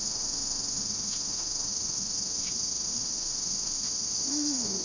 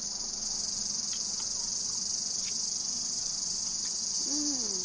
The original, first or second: second